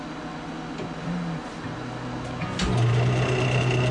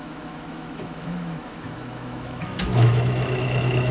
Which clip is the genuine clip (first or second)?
first